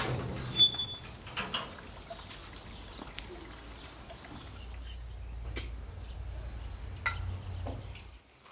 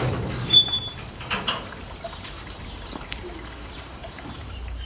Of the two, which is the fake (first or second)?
second